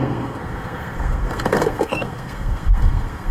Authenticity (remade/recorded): remade